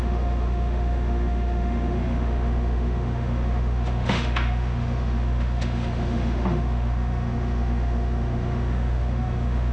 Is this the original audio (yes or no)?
no